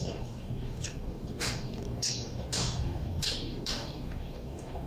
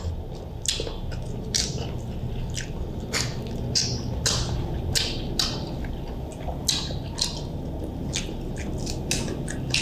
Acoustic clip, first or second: second